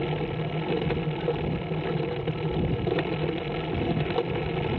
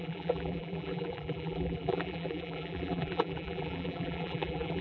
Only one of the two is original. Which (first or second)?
first